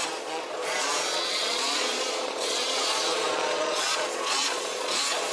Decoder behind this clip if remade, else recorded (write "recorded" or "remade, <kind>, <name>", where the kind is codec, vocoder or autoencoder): remade, vocoder, Vocos